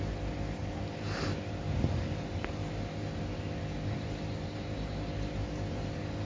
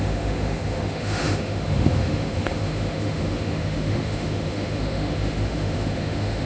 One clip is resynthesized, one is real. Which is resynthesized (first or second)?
second